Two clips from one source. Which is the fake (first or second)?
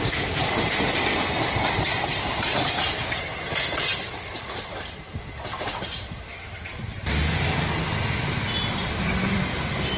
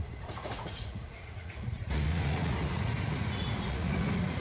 second